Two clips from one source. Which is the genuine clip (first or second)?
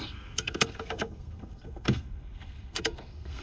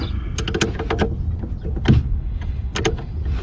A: second